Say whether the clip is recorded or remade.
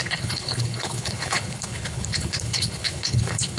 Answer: remade